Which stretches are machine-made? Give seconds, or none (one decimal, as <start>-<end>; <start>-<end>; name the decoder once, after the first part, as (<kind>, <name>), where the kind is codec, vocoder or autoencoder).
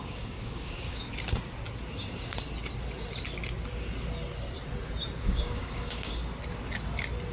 0.0-1.1 (codec, DAC); 5.2-6.2